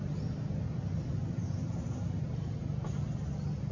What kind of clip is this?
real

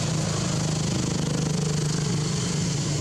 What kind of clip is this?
real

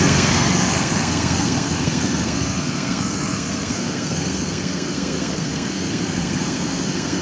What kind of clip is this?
fake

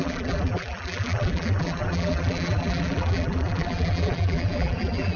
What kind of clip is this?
fake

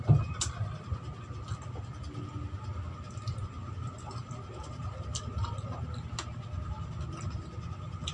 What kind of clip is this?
real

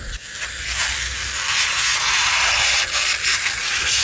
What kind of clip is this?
real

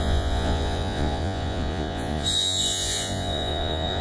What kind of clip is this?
fake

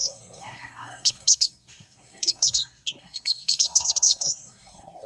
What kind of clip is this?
fake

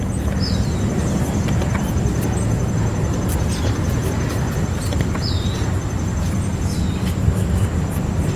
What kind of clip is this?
real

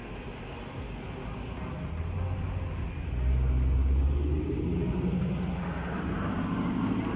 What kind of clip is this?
real